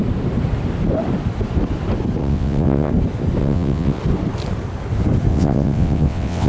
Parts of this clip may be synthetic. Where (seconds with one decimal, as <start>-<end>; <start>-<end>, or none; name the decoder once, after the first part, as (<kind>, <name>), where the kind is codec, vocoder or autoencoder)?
2.2-2.9 (vocoder, WaveNeXt); 3.4-4.0; 5.3-6.5